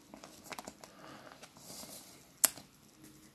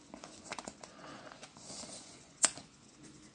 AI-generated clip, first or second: second